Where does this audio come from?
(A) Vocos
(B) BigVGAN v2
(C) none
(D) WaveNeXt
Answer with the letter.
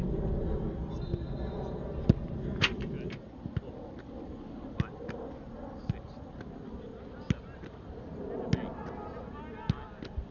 C